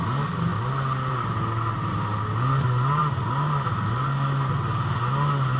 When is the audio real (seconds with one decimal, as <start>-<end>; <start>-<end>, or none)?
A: 0.0-5.6